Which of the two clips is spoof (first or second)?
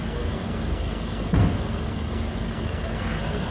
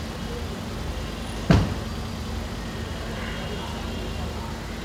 first